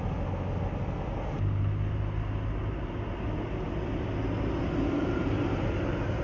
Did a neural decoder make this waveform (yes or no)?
no